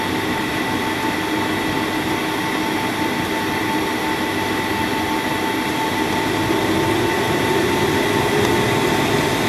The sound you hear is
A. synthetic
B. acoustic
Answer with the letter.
B